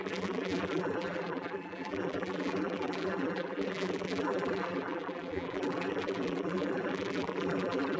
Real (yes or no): no